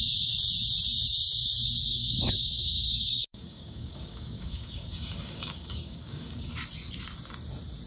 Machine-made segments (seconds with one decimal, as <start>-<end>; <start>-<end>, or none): 1.8-6.5